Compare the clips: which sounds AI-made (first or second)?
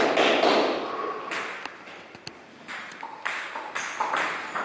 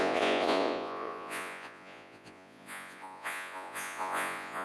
second